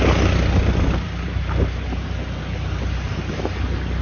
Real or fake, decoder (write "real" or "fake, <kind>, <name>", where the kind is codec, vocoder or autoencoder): real